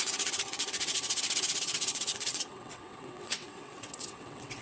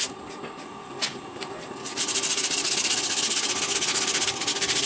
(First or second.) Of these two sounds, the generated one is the first